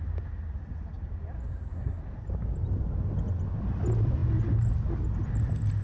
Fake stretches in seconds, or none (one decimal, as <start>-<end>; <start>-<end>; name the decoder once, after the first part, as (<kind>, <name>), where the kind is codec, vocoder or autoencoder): 1.4-2.0 (codec, SNAC)